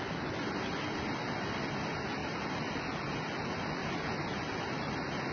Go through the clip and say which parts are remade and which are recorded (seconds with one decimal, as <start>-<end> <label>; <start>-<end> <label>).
0.0-3.8 recorded; 3.8-4.4 remade; 4.4-5.3 recorded